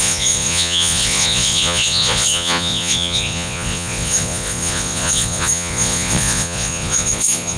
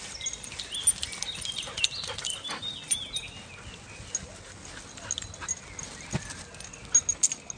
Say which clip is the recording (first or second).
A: second